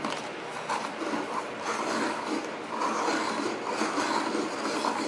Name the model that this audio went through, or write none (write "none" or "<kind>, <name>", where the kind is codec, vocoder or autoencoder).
none